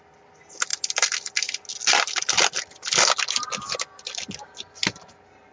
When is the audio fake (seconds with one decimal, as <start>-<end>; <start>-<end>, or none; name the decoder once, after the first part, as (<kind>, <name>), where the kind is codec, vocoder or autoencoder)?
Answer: none